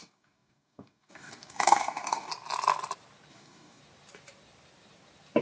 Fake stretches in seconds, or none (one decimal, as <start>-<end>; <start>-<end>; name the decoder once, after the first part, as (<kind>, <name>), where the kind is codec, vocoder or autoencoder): 0.0-2.3 (codec, DAC); 3.3-3.8